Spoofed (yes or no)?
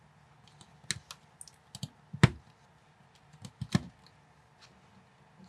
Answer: no